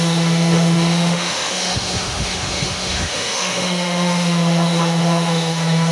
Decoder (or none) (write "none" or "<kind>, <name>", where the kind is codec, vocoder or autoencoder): autoencoder, DAC-VAE